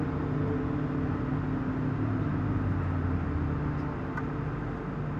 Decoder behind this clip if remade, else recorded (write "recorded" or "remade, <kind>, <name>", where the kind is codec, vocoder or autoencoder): recorded